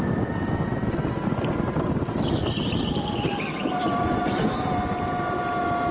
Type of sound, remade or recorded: recorded